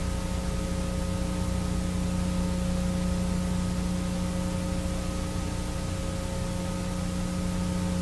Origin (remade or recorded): recorded